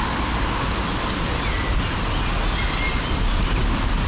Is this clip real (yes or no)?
yes